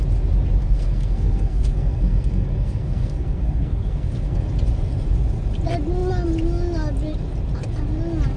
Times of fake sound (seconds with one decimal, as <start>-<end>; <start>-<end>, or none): 0.6-4.5